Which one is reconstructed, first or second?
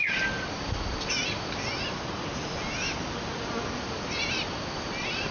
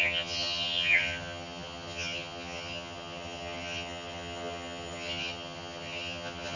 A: second